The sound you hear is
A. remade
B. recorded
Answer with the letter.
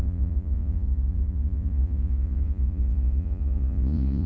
A